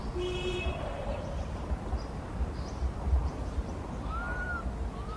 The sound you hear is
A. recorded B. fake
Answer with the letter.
A